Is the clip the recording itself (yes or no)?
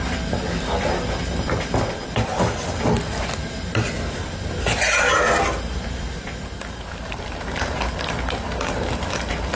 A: yes